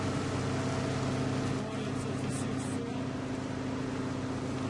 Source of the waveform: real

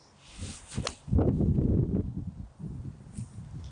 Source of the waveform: real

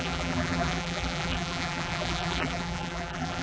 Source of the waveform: fake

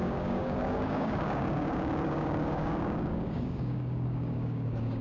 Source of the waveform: fake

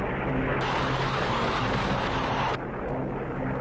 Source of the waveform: real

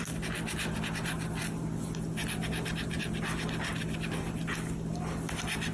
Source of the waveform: real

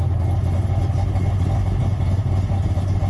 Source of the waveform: real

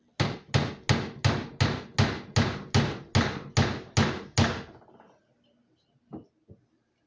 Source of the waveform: real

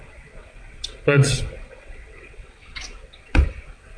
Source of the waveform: fake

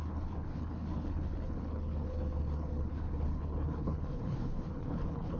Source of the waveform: fake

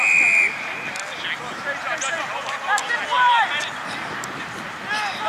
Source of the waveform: real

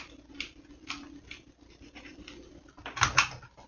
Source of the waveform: real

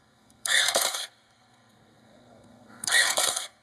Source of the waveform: fake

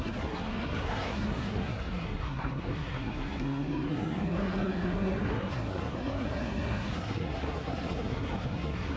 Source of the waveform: fake